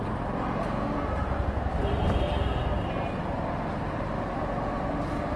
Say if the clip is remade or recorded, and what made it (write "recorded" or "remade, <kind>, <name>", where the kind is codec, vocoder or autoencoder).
recorded